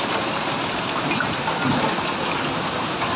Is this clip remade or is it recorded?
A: recorded